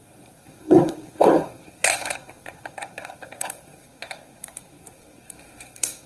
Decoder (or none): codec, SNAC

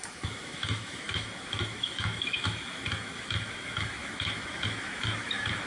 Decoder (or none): autoencoder, DAC-VAE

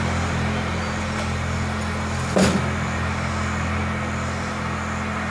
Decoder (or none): none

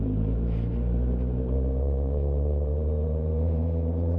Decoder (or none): vocoder, BigVGAN v2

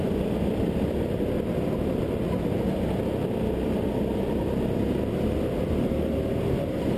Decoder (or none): none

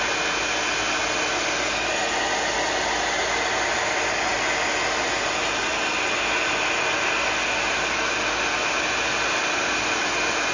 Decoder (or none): none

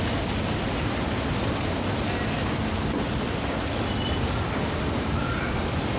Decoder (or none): none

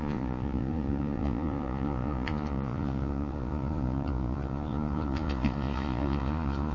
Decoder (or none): vocoder, Vocos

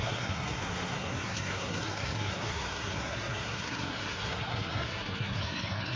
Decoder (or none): codec, SNAC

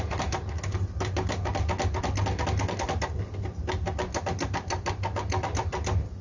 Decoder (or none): none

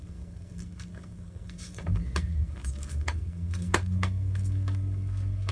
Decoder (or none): codec, SNAC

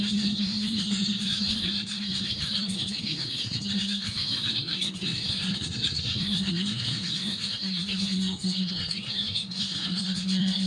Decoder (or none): codec, SNAC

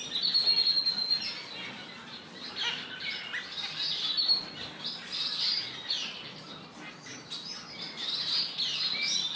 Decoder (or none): none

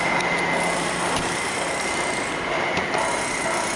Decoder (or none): none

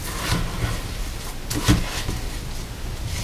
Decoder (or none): none